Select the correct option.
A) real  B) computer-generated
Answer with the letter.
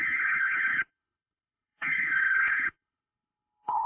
B